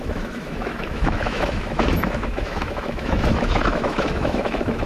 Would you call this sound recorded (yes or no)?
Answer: no